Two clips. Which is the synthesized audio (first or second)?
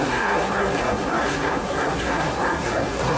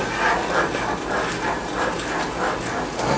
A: first